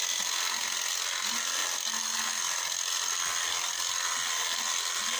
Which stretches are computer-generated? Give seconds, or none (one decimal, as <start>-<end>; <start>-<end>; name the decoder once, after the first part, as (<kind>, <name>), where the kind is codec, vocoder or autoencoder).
none